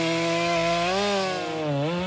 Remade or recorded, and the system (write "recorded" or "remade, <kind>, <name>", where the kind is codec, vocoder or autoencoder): recorded